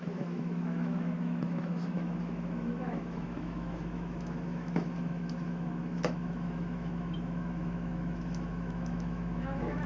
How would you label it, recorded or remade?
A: remade